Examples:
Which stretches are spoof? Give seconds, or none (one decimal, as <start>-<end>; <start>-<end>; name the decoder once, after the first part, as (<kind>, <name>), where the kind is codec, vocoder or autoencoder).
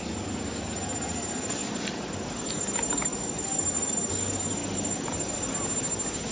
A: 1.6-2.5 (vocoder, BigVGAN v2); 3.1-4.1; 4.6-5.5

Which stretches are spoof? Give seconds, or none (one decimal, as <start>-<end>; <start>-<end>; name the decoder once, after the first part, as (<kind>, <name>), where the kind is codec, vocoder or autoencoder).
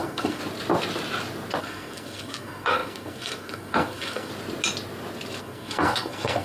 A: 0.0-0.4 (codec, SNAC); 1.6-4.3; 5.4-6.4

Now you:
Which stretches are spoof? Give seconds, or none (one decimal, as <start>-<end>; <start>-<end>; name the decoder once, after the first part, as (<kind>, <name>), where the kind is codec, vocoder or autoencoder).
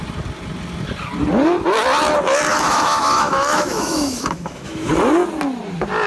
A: 2.5-4.9 (autoencoder, DAC-VAE)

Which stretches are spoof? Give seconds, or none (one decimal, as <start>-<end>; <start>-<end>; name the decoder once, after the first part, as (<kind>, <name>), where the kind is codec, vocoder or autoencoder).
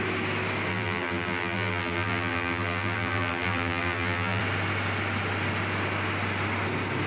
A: 0.7-4.4 (vocoder, BigVGAN v2)